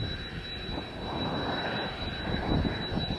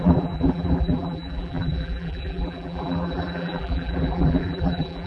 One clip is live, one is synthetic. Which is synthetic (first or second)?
second